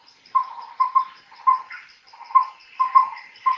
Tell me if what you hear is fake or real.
fake